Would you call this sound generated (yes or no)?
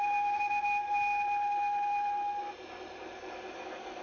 no